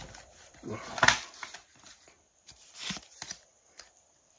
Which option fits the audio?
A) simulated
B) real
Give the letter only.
A